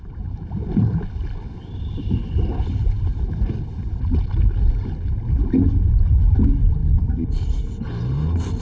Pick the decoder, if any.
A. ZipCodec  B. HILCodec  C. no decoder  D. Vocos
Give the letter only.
C